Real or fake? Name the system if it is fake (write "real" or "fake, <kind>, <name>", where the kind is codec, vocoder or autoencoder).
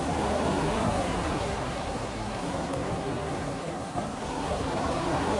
fake, codec, SNAC